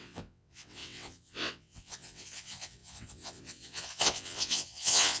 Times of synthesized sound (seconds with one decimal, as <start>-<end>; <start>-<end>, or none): 0.0-5.2